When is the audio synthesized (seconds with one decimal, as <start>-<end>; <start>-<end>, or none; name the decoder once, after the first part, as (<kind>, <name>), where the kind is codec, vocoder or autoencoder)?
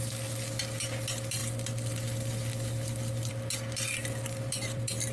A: none